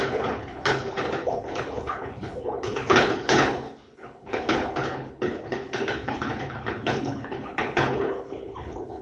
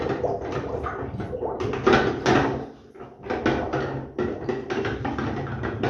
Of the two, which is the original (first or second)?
second